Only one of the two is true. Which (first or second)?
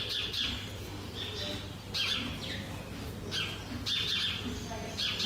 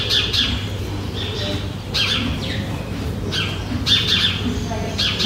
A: first